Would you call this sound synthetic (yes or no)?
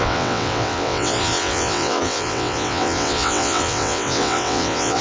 yes